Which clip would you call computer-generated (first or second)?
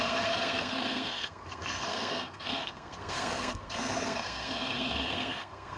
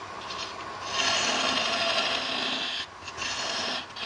first